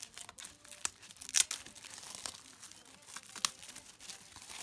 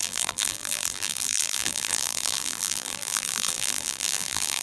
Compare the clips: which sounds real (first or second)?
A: first